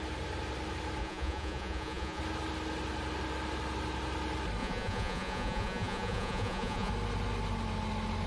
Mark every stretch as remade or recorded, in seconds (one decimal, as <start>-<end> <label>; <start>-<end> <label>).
0.0-1.0 recorded; 1.0-2.2 remade; 2.2-4.6 recorded; 4.6-6.9 remade; 6.9-8.3 recorded